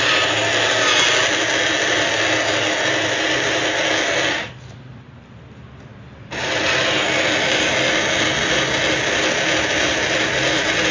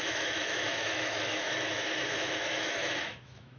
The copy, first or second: second